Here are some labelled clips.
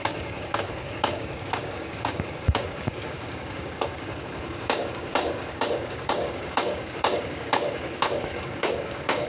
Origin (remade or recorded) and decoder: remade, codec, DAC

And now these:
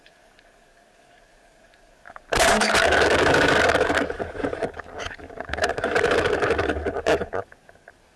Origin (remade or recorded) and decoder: remade, codec, DAC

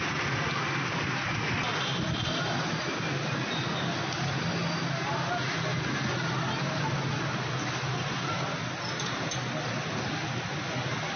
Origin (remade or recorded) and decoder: recorded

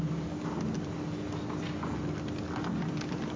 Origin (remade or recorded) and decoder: recorded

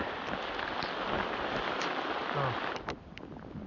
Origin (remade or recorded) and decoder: recorded